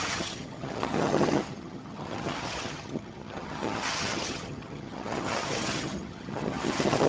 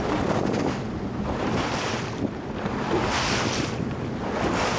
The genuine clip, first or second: second